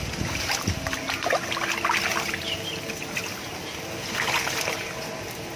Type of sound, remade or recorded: recorded